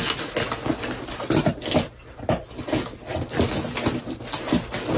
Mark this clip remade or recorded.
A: recorded